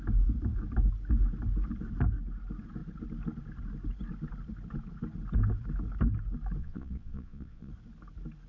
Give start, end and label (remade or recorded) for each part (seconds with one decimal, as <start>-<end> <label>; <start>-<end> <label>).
0.0-6.6 recorded; 6.6-7.7 remade; 7.7-8.5 recorded